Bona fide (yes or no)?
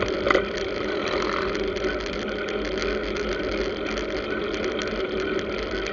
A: yes